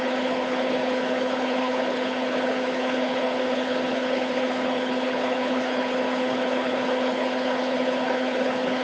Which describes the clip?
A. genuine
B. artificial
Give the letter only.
B